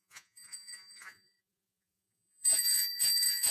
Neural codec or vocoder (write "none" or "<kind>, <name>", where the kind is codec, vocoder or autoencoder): vocoder, Vocos